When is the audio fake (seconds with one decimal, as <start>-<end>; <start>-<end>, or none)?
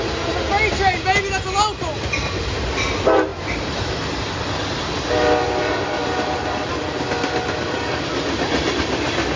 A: 3.3-4.5; 6.0-6.7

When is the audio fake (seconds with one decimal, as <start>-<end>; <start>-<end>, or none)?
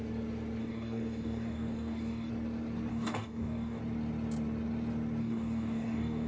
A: 0.6-2.3; 2.9-3.8; 5.2-6.3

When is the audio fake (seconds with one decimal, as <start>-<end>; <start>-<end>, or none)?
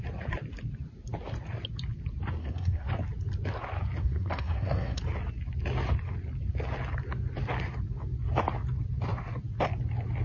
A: 2.4-2.9; 4.0-5.0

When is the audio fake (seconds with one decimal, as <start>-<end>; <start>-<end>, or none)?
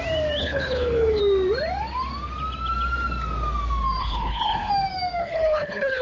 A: 0.4-1.2; 4.0-4.7; 5.2-6.0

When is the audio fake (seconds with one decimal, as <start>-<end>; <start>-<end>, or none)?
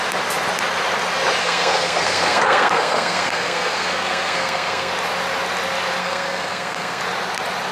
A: 1.4-4.9; 6.0-7.0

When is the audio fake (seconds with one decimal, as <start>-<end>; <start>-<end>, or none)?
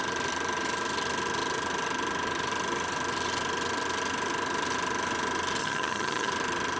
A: 5.6-6.3